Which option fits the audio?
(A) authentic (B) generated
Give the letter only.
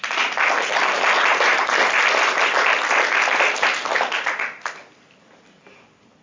A